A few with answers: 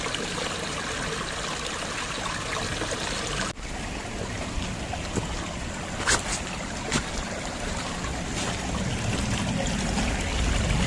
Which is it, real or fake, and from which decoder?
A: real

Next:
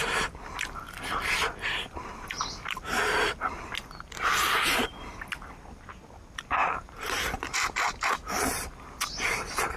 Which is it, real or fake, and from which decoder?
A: real